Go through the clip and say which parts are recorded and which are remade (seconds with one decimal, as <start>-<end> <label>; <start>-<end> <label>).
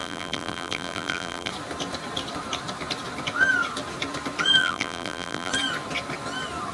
0.0-1.5 remade; 1.5-4.6 recorded; 4.6-5.5 remade; 5.5-6.7 recorded